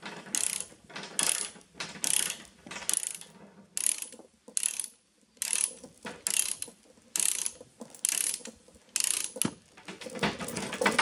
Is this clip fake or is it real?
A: real